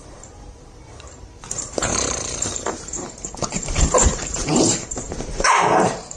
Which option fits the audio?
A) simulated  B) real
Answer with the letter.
A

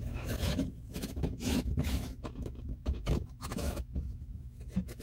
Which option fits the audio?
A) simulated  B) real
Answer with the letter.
A